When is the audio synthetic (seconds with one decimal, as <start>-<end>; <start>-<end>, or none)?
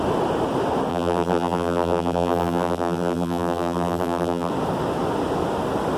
0.9-4.5